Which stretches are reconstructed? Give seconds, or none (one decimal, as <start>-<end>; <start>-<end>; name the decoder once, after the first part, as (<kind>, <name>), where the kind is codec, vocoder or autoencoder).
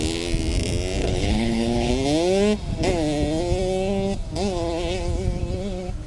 1.0-1.9 (codec, HILCodec)